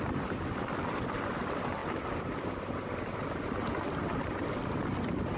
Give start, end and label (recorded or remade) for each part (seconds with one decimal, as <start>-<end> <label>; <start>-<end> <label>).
0.0-5.4 recorded